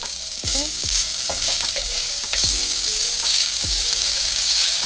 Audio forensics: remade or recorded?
remade